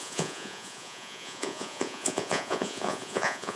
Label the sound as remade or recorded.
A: remade